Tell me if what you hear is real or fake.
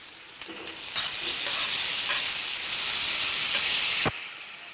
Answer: real